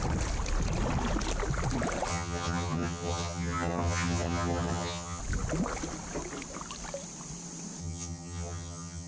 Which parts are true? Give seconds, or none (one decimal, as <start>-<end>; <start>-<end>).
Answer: 0.0-2.1; 5.2-7.8

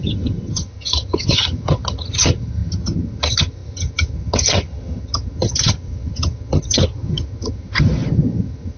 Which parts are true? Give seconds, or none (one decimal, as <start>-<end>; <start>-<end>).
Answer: none

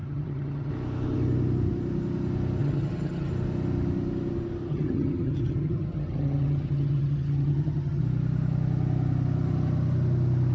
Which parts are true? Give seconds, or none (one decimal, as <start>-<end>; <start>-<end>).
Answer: 0.7-2.6; 3.3-4.7; 8.0-10.5

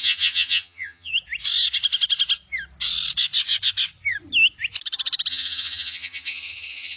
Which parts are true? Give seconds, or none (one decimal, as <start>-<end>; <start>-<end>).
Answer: 1.1-5.3

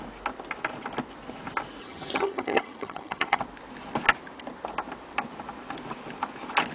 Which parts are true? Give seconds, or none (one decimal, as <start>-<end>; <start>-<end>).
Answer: 0.0-1.8; 3.4-6.7

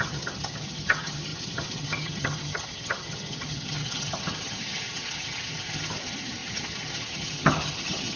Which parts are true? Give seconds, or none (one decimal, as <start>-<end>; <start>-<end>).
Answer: none

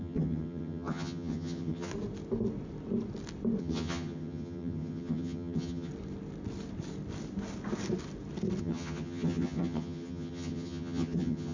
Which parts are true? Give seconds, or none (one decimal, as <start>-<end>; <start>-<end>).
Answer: 1.9-3.6; 5.9-8.6